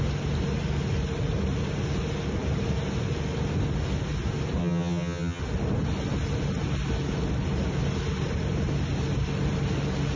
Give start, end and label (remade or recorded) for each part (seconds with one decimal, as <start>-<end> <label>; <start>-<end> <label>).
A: 0.0-4.6 recorded; 4.6-5.4 remade; 5.4-10.2 recorded